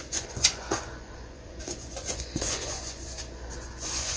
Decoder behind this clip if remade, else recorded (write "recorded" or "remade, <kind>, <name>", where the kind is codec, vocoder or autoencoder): remade, vocoder, Vocos